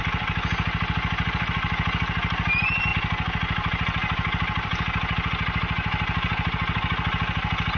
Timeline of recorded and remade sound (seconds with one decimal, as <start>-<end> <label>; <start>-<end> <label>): 0.0-7.8 recorded